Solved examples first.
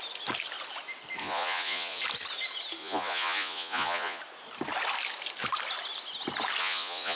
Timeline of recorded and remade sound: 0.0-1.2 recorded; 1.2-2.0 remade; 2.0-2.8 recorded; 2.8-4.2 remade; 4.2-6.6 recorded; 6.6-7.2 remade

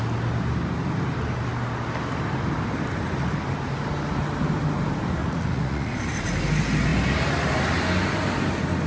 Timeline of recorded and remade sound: 0.0-5.2 recorded; 5.2-5.9 remade; 5.9-8.9 recorded

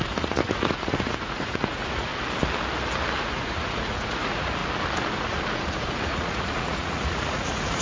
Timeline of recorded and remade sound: 0.0-2.1 remade; 2.1-3.2 recorded; 3.2-4.6 remade; 4.6-5.2 recorded; 5.2-7.8 remade

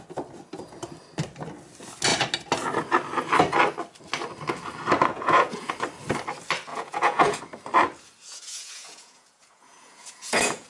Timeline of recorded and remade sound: 0.0-5.1 recorded; 5.1-5.7 remade; 5.7-6.7 recorded; 6.7-7.4 remade; 7.4-8.2 recorded; 8.2-10.7 remade